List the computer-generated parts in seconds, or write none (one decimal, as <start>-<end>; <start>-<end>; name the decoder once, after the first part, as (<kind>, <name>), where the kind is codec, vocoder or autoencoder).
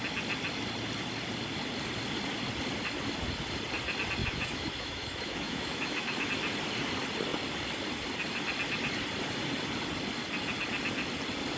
4.2-6.3 (autoencoder, DAC-VAE)